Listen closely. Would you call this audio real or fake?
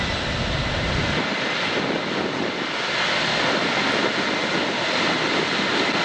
real